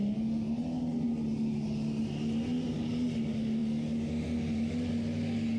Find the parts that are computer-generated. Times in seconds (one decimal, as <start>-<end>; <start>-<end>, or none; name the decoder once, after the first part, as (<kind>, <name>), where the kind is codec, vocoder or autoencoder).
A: none